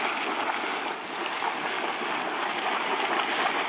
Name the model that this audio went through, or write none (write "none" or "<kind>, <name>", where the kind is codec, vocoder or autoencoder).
none